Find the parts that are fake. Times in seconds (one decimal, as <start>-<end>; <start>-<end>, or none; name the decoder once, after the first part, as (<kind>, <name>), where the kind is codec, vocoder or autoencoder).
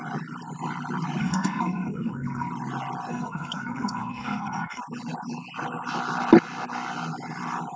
1.2-2.5 (codec, SNAC); 3.1-4.8